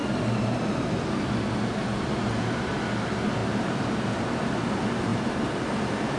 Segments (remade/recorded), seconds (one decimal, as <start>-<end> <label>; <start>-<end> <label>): 0.0-3.4 recorded; 3.4-4.5 remade; 4.5-5.1 recorded; 5.1-6.2 remade